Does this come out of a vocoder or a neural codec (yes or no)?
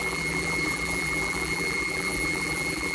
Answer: yes